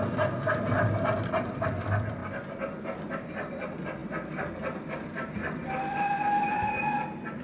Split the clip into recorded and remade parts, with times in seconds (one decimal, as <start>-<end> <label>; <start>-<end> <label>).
0.0-7.4 recorded

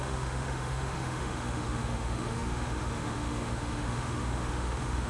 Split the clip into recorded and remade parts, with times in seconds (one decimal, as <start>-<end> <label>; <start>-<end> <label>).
0.0-5.1 remade

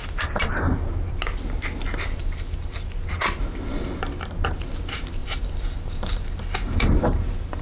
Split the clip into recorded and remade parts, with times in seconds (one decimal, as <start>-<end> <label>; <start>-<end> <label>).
0.0-0.5 remade; 0.5-2.2 recorded; 2.2-3.0 remade; 3.0-5.2 recorded; 5.2-7.6 remade

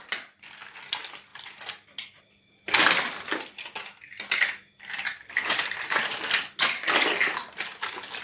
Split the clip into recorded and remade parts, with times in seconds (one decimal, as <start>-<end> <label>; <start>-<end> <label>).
0.0-8.2 recorded

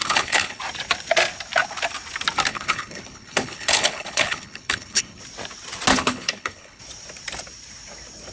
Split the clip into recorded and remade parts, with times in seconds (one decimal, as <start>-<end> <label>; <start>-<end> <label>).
0.0-0.6 remade; 0.6-2.5 recorded; 2.5-5.2 remade; 5.2-5.9 recorded; 5.9-6.8 remade; 6.8-8.3 recorded